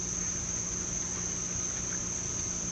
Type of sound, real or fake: real